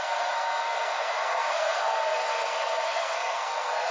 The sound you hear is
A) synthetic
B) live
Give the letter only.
A